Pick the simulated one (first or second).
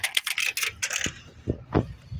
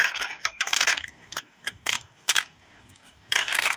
second